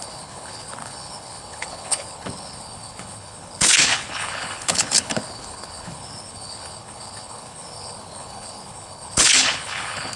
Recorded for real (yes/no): no